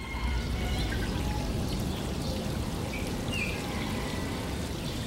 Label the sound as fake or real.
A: real